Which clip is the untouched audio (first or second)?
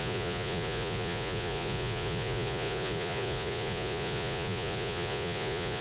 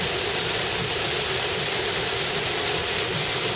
second